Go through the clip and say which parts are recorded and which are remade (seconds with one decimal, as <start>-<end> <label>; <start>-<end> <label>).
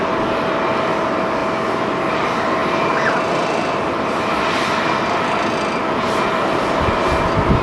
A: 0.0-7.6 recorded